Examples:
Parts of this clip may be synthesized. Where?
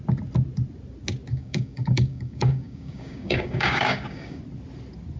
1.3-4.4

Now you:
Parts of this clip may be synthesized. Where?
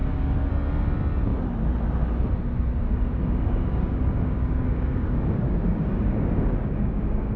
0.0-0.5; 2.8-7.4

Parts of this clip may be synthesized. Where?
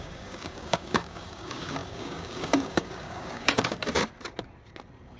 0.0-4.0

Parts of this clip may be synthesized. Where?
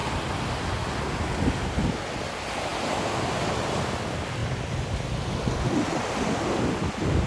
none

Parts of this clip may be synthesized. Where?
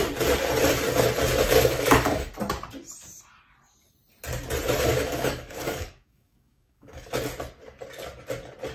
1.5-2.3; 4.9-7.1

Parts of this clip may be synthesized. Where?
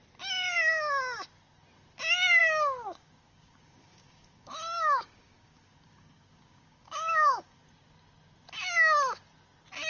2.4-7.6